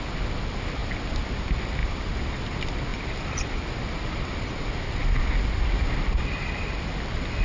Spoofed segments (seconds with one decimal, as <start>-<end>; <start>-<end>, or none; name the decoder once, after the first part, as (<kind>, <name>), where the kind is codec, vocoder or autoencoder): 1.8-2.4 (vocoder, BigVGAN v2); 2.9-3.8